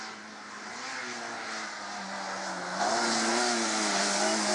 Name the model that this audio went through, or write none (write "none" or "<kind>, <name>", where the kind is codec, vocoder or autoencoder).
none